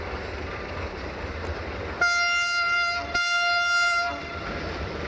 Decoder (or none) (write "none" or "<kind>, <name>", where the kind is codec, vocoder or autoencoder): none